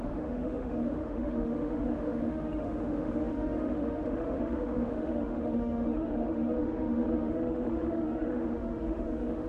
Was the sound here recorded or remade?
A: remade